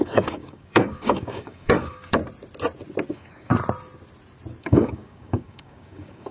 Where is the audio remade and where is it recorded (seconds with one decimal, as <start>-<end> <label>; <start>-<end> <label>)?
0.0-2.2 remade; 2.2-3.1 recorded; 3.1-3.5 remade; 3.5-4.6 recorded; 4.6-6.3 remade